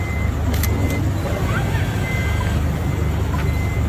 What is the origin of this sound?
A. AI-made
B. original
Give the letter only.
B